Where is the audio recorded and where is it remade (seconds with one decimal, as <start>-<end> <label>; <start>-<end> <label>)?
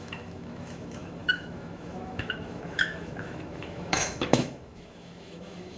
0.0-5.8 remade